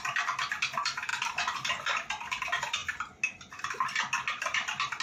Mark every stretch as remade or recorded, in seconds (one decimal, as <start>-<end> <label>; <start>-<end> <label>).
0.0-5.0 recorded